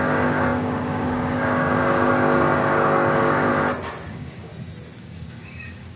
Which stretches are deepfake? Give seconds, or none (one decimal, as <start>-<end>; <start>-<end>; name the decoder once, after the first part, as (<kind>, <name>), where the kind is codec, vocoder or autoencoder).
0.0-3.5 (codec, DAC); 4.1-4.5; 5.0-6.0

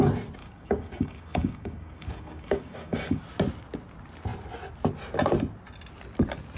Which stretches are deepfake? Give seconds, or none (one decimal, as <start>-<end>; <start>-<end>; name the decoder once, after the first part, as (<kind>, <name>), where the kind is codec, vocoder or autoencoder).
0.4-3.2 (codec, DAC)

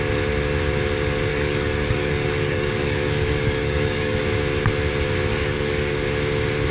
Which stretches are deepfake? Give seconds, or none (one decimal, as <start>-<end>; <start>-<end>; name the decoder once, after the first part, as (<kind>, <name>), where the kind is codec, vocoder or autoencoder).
1.3-4.2 (codec, DAC); 5.3-5.9

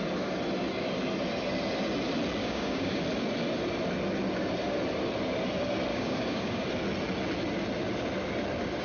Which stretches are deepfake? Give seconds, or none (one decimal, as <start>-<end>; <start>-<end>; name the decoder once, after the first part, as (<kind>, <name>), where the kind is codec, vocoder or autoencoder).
2.4-3.0 (codec, DAC); 5.9-6.6

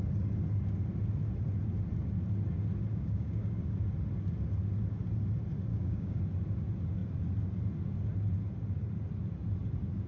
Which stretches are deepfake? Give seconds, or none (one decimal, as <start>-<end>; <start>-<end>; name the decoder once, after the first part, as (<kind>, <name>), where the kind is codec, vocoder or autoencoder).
2.9-3.6 (codec, DAC); 5.7-6.2

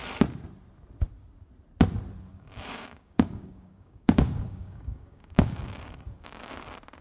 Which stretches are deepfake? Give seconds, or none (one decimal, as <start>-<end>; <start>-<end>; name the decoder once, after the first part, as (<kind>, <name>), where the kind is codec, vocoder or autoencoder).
2.3-6.5 (codec, DAC)

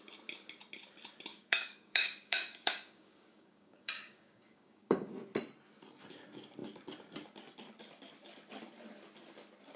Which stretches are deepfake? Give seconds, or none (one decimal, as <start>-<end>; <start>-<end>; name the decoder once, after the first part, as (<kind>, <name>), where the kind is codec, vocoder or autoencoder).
1.3-5.1 (codec, DAC)

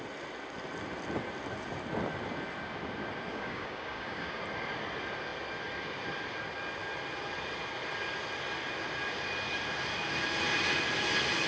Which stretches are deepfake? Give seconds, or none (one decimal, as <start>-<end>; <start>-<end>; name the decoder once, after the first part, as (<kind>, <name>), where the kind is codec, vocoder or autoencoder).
3.3-4.4 (codec, DAC)